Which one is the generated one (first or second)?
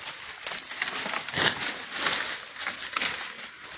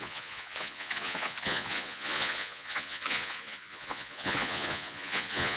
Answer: second